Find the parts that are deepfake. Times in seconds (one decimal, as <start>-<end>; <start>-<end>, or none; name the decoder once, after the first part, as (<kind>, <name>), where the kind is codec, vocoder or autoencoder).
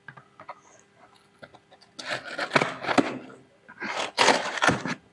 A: none